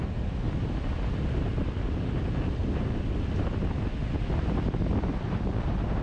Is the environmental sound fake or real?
real